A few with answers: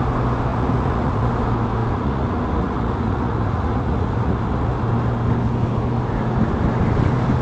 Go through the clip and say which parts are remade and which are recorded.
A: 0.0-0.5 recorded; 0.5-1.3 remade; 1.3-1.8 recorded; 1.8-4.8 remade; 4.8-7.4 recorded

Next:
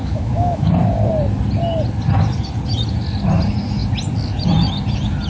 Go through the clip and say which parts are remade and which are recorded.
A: 0.0-0.7 remade; 0.7-5.3 recorded

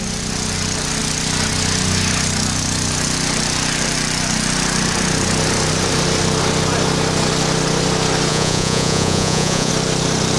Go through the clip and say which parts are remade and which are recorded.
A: 0.0-8.3 recorded; 8.3-9.7 remade; 9.7-10.4 recorded